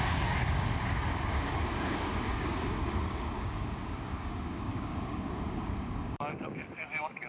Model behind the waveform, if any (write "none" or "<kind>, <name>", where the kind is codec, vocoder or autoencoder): codec, DAC